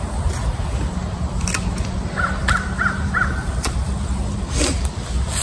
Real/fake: real